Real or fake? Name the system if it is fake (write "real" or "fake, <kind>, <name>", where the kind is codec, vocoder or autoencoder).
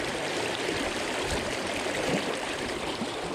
fake, vocoder, BigVGAN v2